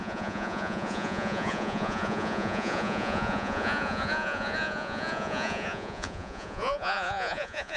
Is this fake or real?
fake